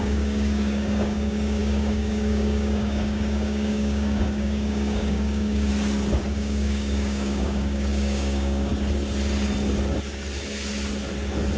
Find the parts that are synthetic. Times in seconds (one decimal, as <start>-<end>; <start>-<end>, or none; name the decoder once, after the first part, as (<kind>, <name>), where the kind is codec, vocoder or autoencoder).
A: 0.0-5.7 (codec, DAC); 6.3-8.7